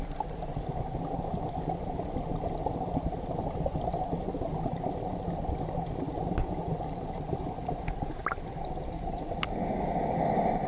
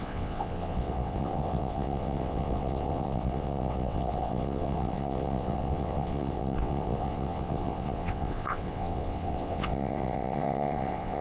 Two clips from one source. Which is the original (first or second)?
first